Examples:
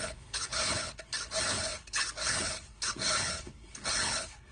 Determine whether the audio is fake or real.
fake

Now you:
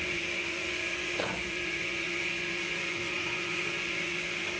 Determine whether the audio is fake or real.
fake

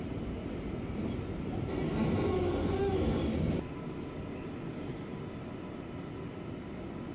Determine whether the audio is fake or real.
real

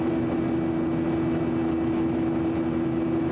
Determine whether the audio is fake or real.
real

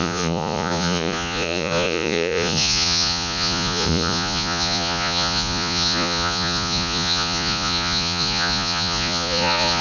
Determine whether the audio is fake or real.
fake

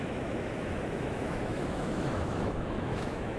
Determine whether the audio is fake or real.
fake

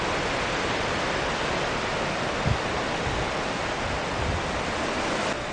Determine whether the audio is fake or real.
real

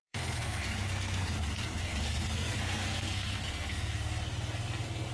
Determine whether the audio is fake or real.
fake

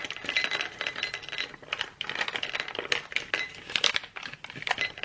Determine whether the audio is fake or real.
real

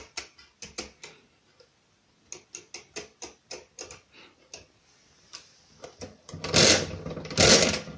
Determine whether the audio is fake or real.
real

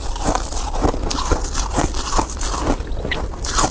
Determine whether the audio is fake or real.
real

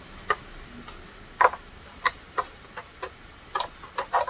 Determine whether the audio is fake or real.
real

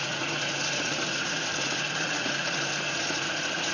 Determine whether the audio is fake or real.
fake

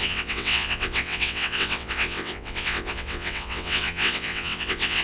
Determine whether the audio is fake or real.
fake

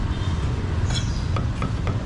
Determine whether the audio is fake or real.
fake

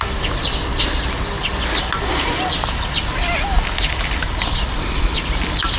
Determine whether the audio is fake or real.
real